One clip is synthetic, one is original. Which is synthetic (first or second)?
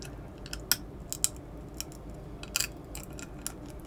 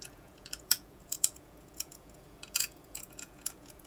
second